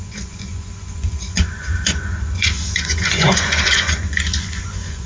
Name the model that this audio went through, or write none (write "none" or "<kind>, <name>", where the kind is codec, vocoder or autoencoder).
vocoder, Vocos